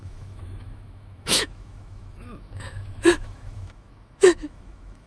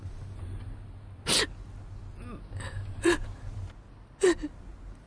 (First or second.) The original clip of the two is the second